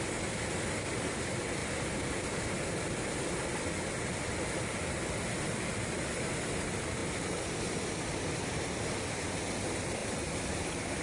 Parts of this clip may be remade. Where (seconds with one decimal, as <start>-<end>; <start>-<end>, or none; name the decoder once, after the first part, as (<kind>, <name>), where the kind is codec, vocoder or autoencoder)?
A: none